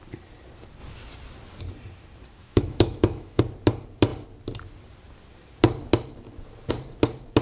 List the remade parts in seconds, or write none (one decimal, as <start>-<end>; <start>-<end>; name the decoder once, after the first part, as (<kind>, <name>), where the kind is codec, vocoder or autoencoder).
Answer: 2.4-3.4 (autoencoder, DAC-VAE)